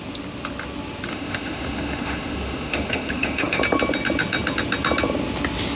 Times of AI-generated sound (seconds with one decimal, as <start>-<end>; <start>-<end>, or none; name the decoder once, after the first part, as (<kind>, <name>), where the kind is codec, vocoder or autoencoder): 1.1-3.6 (autoencoder, DAC-VAE)